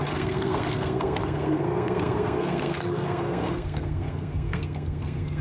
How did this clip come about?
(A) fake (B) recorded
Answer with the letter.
A